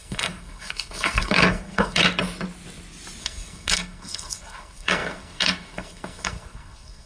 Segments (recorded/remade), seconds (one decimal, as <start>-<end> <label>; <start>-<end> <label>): 0.0-2.0 remade; 2.0-3.2 recorded; 3.2-7.1 remade